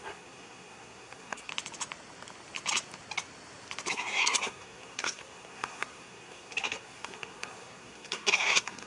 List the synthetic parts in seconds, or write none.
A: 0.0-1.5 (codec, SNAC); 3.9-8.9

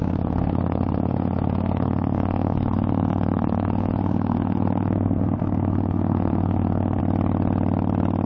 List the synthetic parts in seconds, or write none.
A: 0.0-7.0 (codec, SNAC)

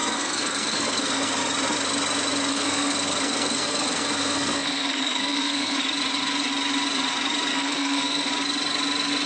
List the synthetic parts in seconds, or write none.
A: 0.0-1.3 (codec, SNAC); 2.5-5.8; 7.5-8.3